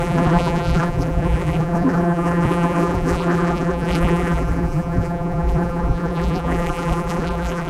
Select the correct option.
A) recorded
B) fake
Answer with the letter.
B